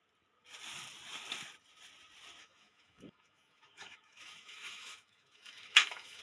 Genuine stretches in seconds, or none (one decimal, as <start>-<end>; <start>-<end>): 0.0-2.4